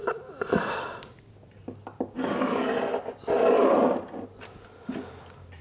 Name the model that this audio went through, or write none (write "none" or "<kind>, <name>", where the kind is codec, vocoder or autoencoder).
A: none